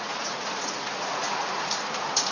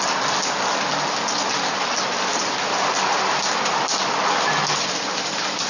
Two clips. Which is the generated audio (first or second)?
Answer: first